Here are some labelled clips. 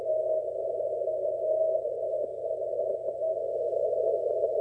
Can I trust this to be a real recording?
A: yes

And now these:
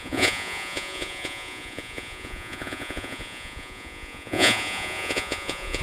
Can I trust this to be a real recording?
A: no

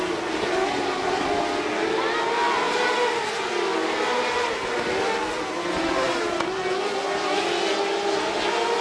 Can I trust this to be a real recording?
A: yes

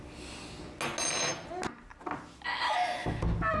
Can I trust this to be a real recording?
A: yes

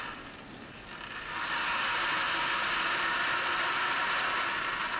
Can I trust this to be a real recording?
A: yes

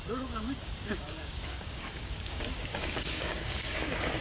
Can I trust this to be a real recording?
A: no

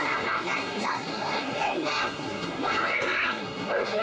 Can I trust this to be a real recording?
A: no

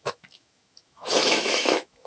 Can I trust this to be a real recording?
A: no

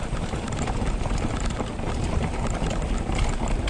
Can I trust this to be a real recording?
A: yes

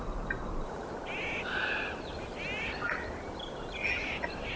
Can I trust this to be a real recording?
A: yes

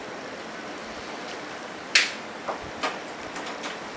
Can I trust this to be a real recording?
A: yes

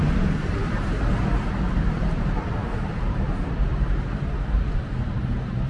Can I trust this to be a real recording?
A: no